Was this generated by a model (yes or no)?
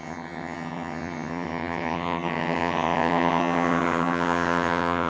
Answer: yes